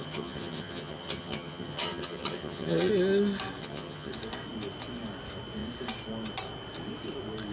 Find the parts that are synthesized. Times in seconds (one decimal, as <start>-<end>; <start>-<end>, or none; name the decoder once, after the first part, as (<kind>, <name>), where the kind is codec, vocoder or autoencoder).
0.0-2.9 (vocoder, HiFi-GAN); 3.6-4.1